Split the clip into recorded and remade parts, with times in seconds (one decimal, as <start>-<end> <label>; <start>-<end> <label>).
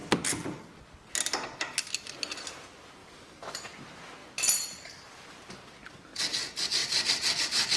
0.0-3.0 recorded; 3.0-3.8 remade; 3.8-4.2 recorded; 4.2-5.5 remade; 5.5-7.8 recorded